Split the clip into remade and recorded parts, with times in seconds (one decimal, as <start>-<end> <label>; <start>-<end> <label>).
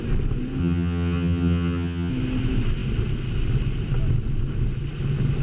0.0-0.6 recorded; 0.6-2.1 remade; 2.1-5.4 recorded